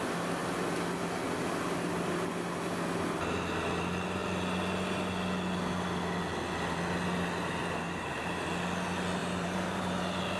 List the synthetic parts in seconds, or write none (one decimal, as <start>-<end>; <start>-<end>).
7.6-8.4; 9.2-10.0